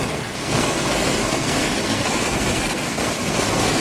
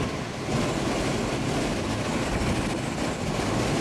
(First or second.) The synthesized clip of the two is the first